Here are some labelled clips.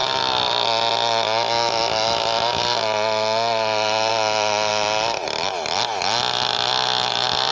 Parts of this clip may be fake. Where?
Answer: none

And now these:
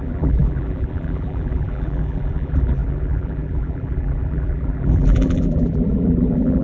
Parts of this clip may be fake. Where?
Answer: 0.0-6.6 (vocoder, BigVGAN v2)